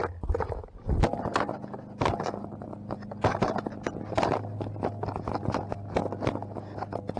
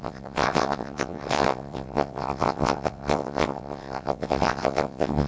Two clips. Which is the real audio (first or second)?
first